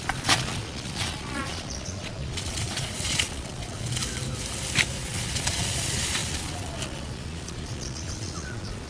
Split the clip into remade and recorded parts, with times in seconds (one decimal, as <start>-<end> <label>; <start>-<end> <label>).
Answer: 0.0-4.0 remade; 4.0-5.0 recorded; 5.0-8.9 remade